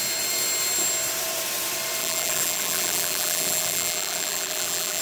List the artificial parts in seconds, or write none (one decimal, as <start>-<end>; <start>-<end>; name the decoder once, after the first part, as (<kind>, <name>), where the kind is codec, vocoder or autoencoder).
2.0-5.0 (vocoder, BigVGAN v2)